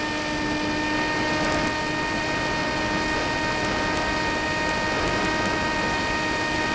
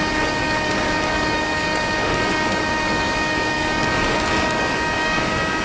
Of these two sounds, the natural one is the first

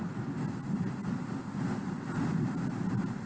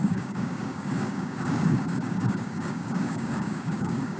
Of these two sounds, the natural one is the first